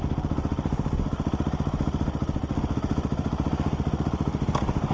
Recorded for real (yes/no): yes